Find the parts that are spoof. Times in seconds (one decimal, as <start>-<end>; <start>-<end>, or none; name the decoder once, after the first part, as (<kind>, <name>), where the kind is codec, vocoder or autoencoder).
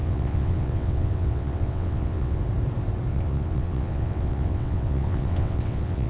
0.0-2.4 (vocoder, WaveNeXt); 3.1-6.1